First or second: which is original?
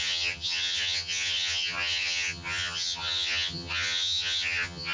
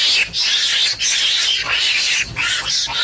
second